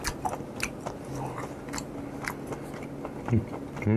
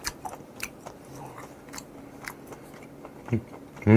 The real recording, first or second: first